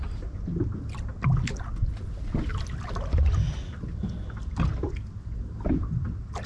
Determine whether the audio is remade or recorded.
recorded